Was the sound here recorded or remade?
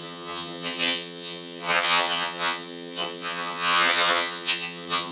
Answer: remade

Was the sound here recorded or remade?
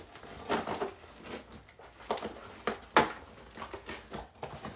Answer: recorded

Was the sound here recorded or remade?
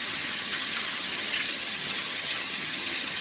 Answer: remade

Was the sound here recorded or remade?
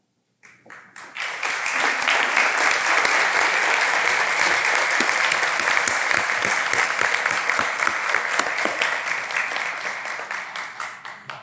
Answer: recorded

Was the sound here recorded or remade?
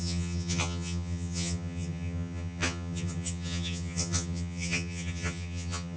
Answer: remade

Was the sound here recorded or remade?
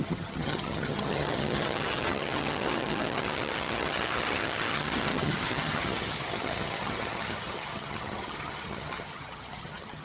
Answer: remade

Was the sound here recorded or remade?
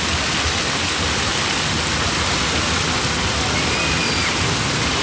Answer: recorded